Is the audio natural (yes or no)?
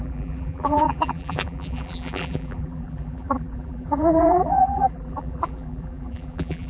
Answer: no